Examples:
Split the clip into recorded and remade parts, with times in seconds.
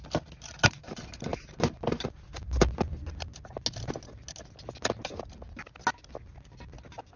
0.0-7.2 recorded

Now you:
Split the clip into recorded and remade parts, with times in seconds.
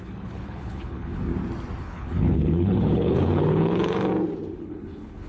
0.0-1.3 remade; 1.3-1.8 recorded; 1.8-4.1 remade; 4.1-4.6 recorded; 4.6-5.3 remade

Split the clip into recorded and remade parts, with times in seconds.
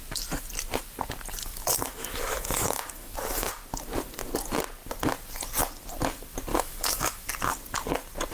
0.0-1.4 recorded; 1.4-3.5 remade; 3.5-6.5 recorded; 6.5-7.3 remade; 7.3-8.3 recorded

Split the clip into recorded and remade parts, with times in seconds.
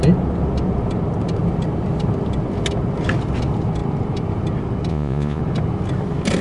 0.0-4.9 recorded; 4.9-5.4 remade; 5.4-6.4 recorded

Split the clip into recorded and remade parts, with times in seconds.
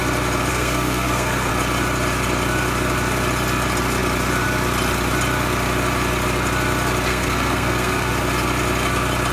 0.0-0.5 recorded; 0.5-1.5 remade; 1.5-7.1 recorded; 7.1-8.1 remade; 8.1-9.3 recorded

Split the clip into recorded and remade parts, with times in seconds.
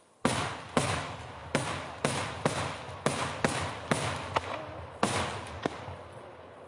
0.0-6.7 recorded